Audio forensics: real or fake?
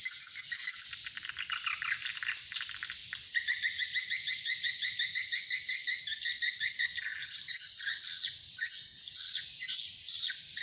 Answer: real